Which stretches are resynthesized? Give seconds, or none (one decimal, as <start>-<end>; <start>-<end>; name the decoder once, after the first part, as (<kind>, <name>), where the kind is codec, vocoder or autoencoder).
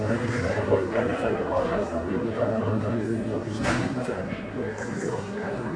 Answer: 0.0-5.8 (codec, SNAC)